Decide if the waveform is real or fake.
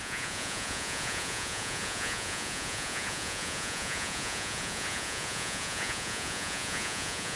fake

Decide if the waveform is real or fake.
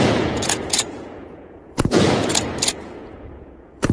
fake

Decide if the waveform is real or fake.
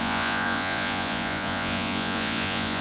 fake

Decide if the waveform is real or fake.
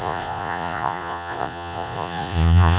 fake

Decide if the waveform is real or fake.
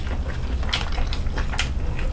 real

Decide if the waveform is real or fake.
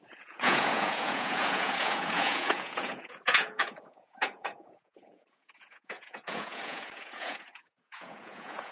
fake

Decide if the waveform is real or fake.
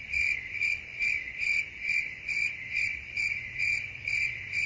fake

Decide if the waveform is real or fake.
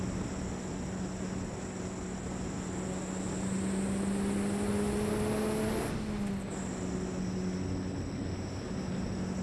real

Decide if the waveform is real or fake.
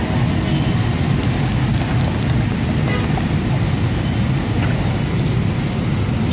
real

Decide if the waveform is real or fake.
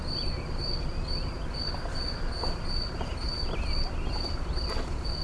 real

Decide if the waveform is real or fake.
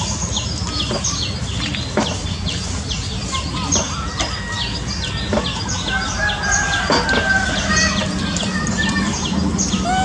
real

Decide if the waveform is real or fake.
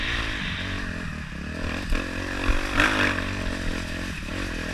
real